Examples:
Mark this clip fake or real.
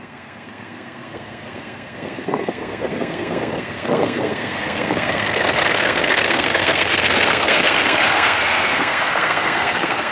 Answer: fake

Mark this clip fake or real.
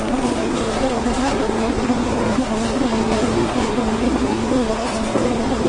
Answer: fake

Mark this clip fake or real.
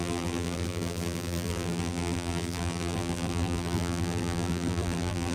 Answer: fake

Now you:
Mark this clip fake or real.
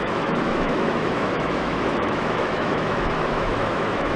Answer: fake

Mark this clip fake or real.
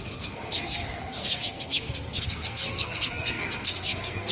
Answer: fake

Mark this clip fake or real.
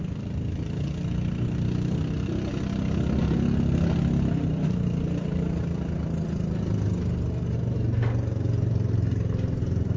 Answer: real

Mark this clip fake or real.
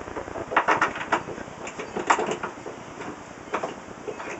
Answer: real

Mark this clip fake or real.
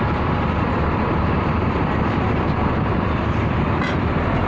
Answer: fake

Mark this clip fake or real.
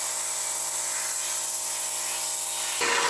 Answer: real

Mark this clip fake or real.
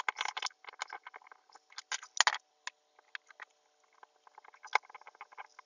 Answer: real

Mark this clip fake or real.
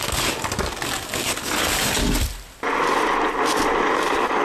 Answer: real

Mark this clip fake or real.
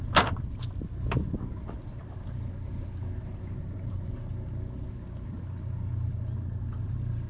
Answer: real